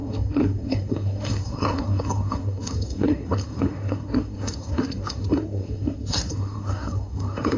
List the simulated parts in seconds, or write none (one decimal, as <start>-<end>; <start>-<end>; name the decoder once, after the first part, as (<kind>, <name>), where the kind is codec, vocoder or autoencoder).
0.0-7.6 (codec, SNAC)